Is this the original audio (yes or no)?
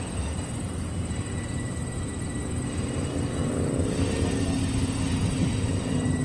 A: yes